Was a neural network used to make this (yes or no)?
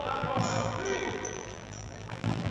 yes